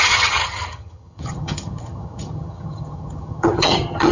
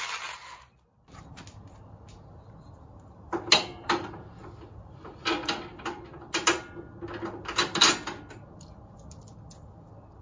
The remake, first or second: first